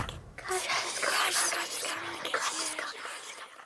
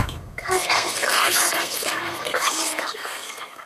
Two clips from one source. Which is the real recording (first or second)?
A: first